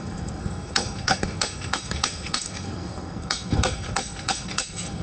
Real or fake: fake